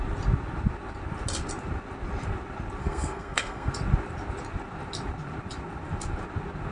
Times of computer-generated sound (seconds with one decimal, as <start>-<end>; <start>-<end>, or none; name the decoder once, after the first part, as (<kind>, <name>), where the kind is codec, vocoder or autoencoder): 2.8-3.7 (codec, SNAC)